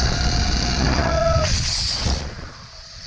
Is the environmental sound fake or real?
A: fake